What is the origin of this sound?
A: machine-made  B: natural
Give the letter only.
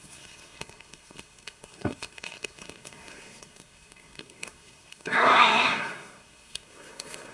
A